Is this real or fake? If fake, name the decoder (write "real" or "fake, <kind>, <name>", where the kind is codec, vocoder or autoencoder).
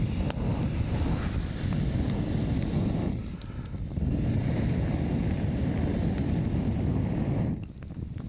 real